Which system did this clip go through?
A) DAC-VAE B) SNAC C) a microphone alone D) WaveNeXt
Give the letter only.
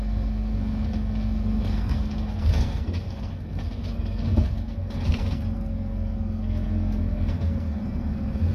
B